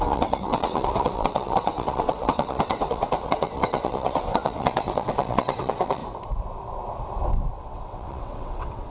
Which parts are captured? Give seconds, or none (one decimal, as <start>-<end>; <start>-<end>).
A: 6.0-7.6